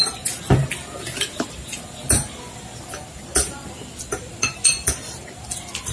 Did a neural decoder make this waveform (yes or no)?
no